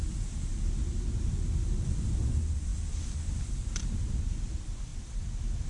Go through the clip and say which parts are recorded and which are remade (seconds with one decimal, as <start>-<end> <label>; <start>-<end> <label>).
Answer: 0.0-5.7 recorded